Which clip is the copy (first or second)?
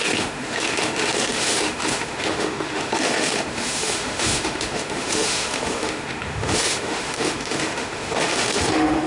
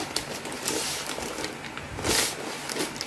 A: first